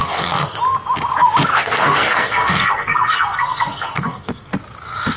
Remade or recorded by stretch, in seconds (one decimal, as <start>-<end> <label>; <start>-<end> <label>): 0.0-0.6 remade; 0.6-1.5 recorded; 1.5-4.5 remade; 4.5-5.2 recorded